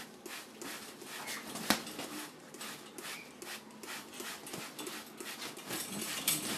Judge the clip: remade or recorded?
recorded